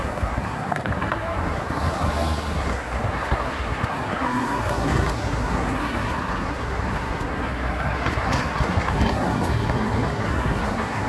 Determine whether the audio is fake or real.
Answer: fake